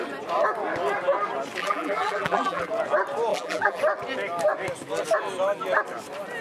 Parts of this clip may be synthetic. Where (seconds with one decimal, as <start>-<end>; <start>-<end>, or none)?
1.6-2.7; 3.3-3.8